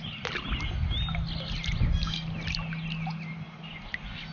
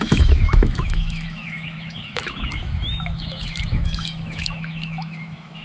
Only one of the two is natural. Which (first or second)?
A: first